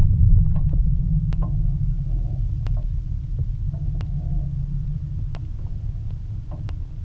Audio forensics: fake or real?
real